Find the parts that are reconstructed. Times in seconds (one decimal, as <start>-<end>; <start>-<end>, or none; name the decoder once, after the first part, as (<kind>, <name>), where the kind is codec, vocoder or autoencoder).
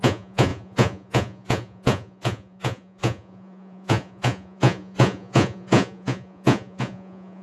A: 0.0-7.4 (vocoder, Vocos)